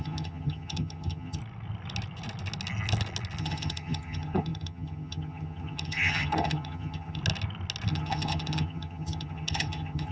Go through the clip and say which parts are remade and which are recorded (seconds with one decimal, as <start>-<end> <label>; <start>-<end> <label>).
0.0-1.4 remade; 1.4-3.4 recorded; 3.4-7.2 remade; 7.2-7.9 recorded; 7.9-10.1 remade